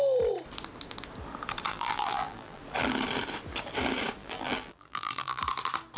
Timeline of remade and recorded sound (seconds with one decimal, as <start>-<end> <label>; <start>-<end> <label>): 0.0-1.7 recorded; 1.7-2.6 remade; 2.6-4.2 recorded; 4.2-5.4 remade; 5.4-6.0 recorded